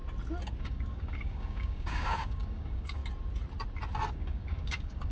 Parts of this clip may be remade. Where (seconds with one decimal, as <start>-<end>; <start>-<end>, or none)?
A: 0.6-3.0; 4.1-5.1